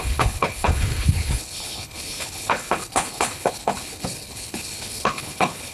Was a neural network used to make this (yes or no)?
yes